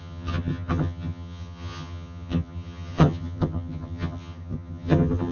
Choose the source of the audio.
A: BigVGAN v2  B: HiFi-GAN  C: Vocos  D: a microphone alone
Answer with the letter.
B